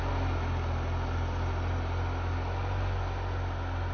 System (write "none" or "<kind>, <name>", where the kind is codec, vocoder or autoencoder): none